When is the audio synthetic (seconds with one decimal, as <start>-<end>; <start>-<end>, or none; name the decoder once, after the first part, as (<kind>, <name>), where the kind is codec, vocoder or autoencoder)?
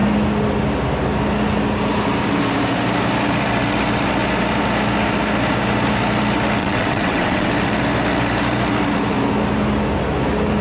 6.6-7.5 (vocoder, WaveNeXt)